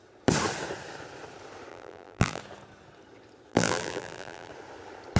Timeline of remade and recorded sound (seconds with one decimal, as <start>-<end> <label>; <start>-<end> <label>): 0.0-1.7 recorded; 1.7-2.4 remade; 2.4-3.5 recorded; 3.5-4.5 remade; 4.5-5.2 recorded